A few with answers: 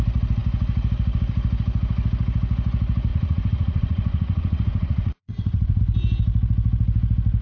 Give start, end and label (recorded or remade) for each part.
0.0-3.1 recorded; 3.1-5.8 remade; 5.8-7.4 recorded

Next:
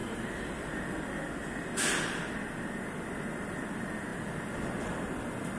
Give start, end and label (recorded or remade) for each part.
0.0-5.6 recorded

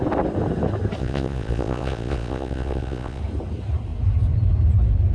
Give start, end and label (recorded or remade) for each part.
0.0-1.0 recorded; 1.0-3.2 remade; 3.2-5.1 recorded

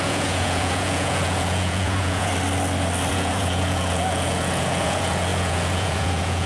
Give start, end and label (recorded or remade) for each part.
0.0-2.3 remade; 2.3-3.1 recorded; 3.1-6.5 remade

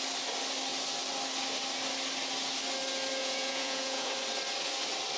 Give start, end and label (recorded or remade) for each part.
0.0-3.2 recorded; 3.2-4.1 remade; 4.1-5.2 recorded

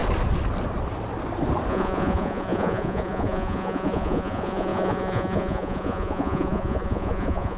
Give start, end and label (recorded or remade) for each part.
0.0-1.7 recorded; 1.7-7.6 remade

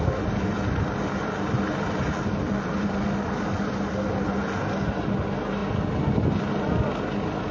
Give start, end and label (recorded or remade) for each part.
0.0-7.5 recorded